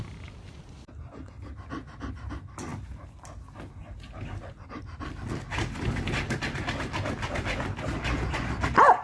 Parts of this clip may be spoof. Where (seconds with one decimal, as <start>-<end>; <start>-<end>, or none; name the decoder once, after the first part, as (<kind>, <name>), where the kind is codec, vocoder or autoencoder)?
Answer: none